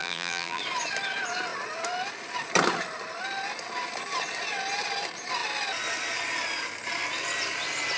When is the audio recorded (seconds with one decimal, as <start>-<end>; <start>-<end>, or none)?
0.6-8.0